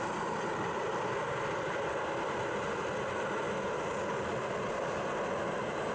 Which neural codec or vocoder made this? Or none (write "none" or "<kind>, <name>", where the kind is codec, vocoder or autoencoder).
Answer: vocoder, BigVGAN v2